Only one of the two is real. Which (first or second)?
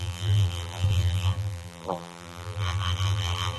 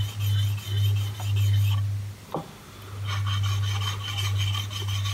second